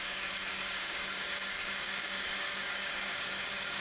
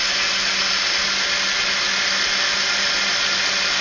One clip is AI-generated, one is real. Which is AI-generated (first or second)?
first